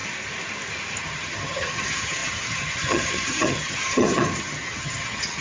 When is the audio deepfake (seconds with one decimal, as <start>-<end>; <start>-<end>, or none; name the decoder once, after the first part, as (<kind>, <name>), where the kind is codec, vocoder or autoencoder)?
1.0-5.4 (vocoder, HiFi-GAN)